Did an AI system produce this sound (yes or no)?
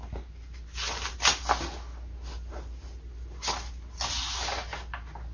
no